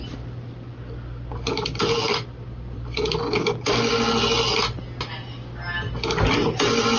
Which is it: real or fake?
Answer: real